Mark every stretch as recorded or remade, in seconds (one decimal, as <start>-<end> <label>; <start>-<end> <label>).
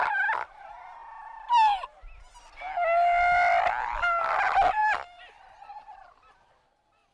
0.0-7.1 recorded